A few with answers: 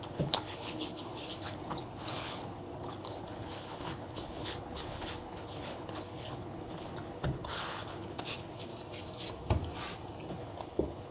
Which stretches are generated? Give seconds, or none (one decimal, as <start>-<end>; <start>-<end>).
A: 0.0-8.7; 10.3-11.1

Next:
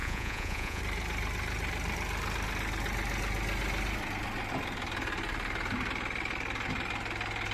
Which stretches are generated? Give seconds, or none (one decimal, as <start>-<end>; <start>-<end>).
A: 0.0-0.8

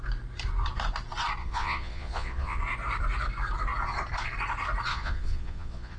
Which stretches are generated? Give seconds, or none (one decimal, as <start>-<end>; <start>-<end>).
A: 1.4-2.6; 4.9-6.0